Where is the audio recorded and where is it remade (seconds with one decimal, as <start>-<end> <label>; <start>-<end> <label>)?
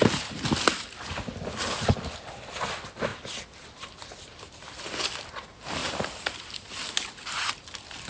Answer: 0.0-3.1 recorded; 3.1-4.8 remade; 4.8-5.8 recorded; 5.8-6.7 remade; 6.7-8.1 recorded